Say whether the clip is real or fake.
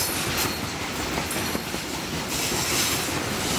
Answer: real